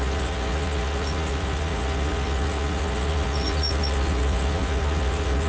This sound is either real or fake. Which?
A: fake